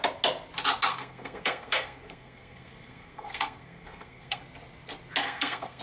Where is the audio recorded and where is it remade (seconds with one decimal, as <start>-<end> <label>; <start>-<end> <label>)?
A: 0.0-0.9 recorded; 0.9-4.4 remade; 4.4-5.2 recorded; 5.2-5.8 remade